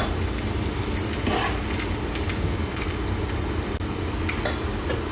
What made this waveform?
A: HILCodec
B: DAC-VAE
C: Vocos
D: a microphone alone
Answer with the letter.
D